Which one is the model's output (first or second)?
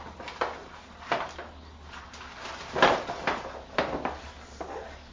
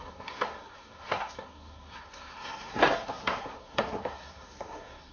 second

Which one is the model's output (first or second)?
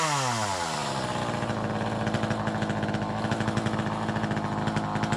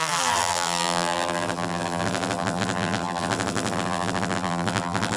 second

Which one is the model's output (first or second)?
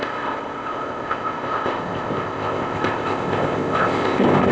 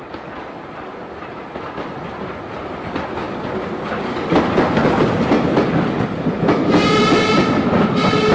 first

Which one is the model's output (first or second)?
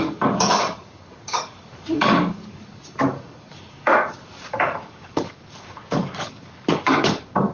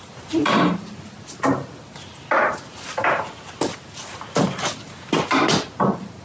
first